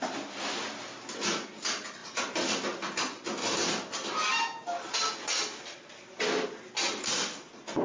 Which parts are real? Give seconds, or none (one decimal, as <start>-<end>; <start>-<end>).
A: 0.0-7.8